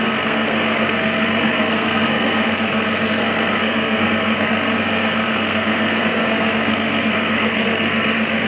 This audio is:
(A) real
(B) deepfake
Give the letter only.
B